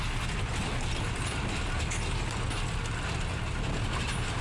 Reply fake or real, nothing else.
real